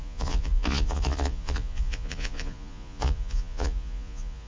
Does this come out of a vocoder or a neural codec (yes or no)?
yes